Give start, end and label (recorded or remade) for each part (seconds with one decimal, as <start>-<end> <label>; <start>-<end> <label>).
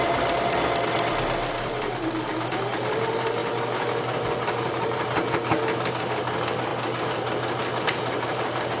0.0-1.4 recorded; 1.4-1.9 remade; 1.9-8.8 recorded